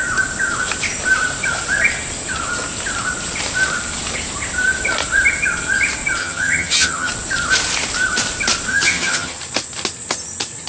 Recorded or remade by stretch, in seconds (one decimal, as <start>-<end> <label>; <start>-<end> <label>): 0.0-6.2 recorded; 6.2-7.1 remade; 7.1-8.7 recorded; 8.7-9.4 remade; 9.4-10.7 recorded